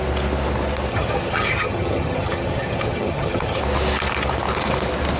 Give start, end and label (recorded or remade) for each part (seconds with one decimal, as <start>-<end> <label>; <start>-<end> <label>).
0.0-0.9 recorded; 0.9-3.6 remade; 3.6-5.2 recorded